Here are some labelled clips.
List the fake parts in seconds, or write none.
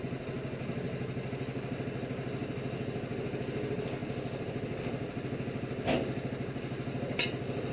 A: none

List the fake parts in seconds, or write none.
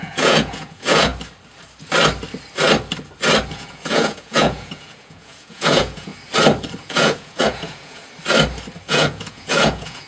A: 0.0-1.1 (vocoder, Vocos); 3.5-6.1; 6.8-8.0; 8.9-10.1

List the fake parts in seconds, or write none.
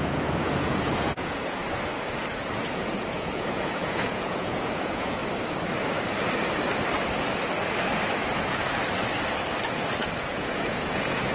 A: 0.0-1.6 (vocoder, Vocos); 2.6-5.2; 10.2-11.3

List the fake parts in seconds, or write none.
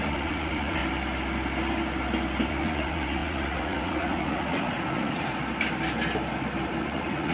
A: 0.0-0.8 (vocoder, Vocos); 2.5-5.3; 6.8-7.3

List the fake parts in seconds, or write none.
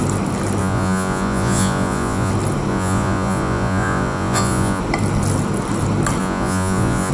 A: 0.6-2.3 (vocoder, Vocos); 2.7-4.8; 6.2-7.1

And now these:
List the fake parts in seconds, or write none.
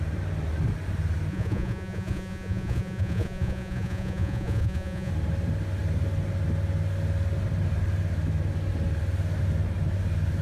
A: 1.3-5.1 (vocoder, Vocos)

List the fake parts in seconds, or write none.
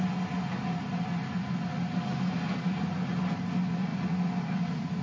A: none